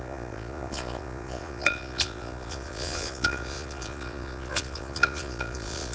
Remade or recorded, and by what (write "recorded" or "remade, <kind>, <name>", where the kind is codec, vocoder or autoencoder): remade, vocoder, Vocos